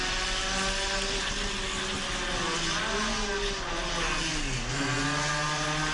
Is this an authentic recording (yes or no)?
yes